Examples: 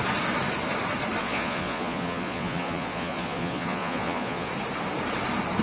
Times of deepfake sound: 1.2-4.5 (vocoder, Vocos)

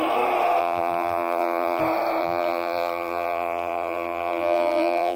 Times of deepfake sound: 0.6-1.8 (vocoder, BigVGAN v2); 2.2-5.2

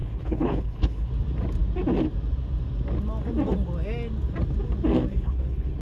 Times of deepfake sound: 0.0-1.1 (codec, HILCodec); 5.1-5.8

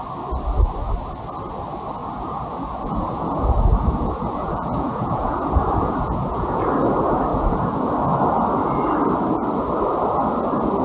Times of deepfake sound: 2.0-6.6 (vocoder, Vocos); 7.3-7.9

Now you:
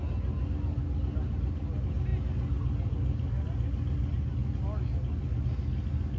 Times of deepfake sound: none

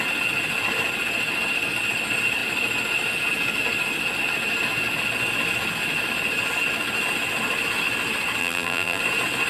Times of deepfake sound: 8.4-9.0 (vocoder, BigVGAN v2)

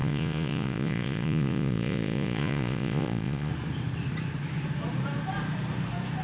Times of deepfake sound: 0.0-3.5 (vocoder, Vocos)

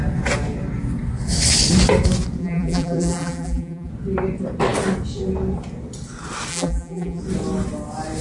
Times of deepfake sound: 2.4-3.9 (vocoder, BigVGAN v2); 6.5-7.2